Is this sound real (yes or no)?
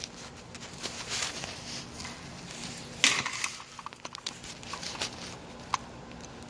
yes